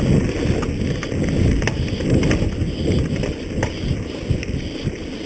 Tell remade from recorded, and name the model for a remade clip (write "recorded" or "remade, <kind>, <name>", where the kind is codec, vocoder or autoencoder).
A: recorded